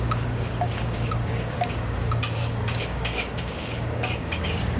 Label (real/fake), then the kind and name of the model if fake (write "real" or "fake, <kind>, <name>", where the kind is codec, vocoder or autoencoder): fake, codec, DAC